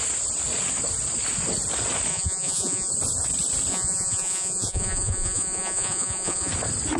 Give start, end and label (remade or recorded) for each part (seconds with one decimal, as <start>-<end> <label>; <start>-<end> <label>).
0.0-2.1 recorded; 2.1-2.9 remade; 2.9-3.7 recorded; 3.7-6.5 remade; 6.5-7.0 recorded